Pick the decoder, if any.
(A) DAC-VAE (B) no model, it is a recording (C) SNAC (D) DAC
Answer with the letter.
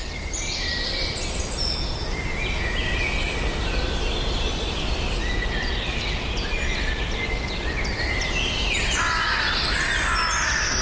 B